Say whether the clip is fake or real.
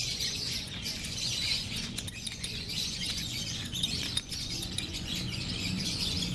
fake